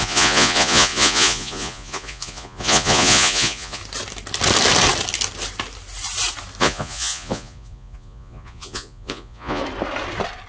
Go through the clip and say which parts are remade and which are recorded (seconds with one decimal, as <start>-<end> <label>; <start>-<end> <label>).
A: 0.0-3.8 remade; 3.8-6.6 recorded; 6.6-9.6 remade; 9.6-10.5 recorded